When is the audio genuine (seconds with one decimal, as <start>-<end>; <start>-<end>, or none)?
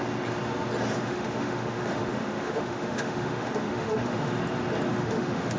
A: 0.0-1.0; 4.4-4.9